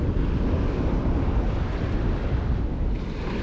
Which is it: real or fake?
real